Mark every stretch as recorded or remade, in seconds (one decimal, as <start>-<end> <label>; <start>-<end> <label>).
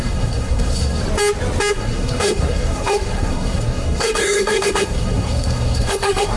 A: 0.0-1.0 remade; 1.0-1.7 recorded; 1.7-6.4 remade